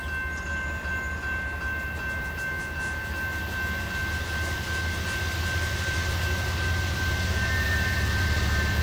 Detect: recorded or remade recorded